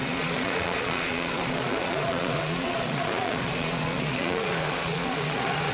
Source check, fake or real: fake